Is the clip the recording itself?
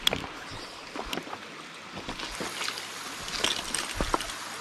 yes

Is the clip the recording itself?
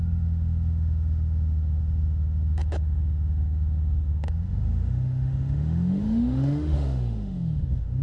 no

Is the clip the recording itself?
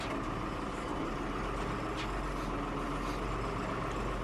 yes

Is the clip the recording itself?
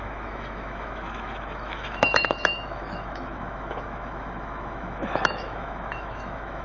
no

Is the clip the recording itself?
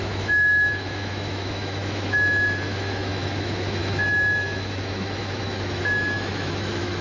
no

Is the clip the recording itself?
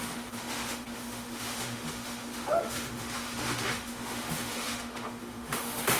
no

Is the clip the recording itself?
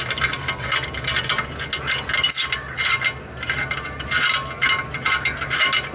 yes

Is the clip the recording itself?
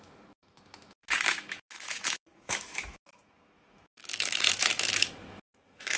no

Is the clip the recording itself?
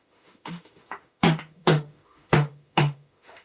no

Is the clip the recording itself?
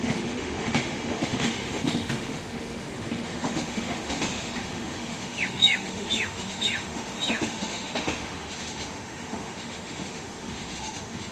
no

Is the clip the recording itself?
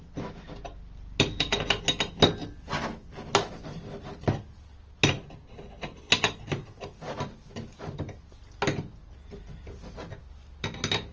yes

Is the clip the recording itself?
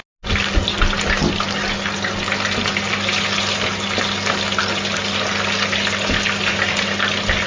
yes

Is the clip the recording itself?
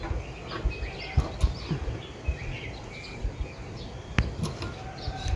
yes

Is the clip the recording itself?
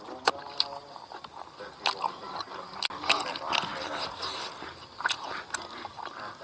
yes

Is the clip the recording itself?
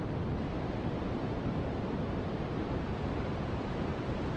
yes